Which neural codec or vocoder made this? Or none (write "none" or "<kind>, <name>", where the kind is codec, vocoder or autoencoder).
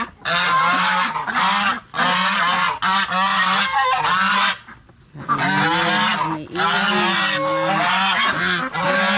none